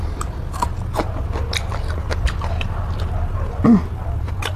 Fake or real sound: real